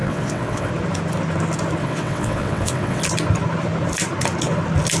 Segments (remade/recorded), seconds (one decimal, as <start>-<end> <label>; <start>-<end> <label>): 0.0-0.7 remade; 0.7-1.8 recorded; 1.8-3.0 remade; 3.0-5.0 recorded